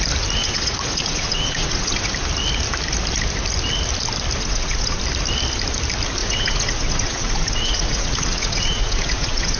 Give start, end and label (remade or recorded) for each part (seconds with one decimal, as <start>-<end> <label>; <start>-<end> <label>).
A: 0.0-0.4 recorded; 0.4-2.1 remade; 2.1-4.4 recorded; 4.4-5.0 remade; 5.0-6.2 recorded; 6.2-9.6 remade